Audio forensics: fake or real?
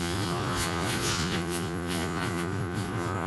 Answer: fake